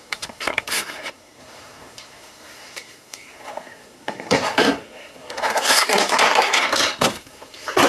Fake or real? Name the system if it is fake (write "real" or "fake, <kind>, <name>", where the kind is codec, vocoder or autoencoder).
fake, codec, SNAC